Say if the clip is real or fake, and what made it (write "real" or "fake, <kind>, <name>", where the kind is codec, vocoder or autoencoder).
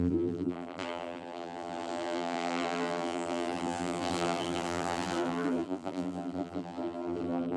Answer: fake, vocoder, BigVGAN v2